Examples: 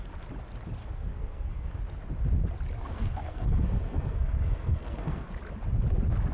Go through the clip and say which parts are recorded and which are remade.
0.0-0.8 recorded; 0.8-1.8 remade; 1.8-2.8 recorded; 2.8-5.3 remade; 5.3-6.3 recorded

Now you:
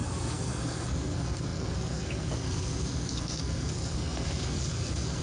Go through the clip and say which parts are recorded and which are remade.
0.0-5.2 remade

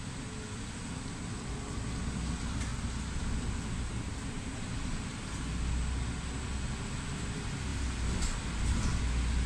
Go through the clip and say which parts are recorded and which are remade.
0.0-9.5 recorded

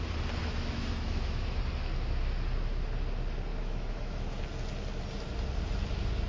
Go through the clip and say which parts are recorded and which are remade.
0.0-0.4 recorded; 0.4-1.6 remade; 1.6-3.5 recorded; 3.5-4.4 remade; 4.4-6.3 recorded

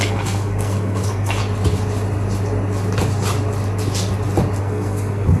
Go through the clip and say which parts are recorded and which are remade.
0.0-1.4 remade; 1.4-4.6 recorded; 4.6-5.4 remade